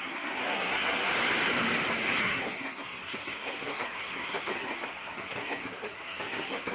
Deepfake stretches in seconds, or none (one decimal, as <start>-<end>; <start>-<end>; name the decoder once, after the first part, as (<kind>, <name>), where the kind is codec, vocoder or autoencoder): 0.0-1.1 (codec, SNAC); 2.2-6.7